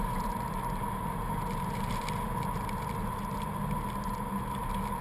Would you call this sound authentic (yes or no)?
yes